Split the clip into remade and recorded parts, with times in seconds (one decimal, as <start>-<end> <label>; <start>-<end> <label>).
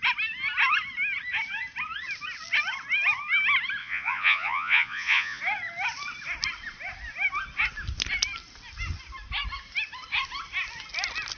0.0-3.8 recorded; 3.8-5.4 remade; 5.4-11.4 recorded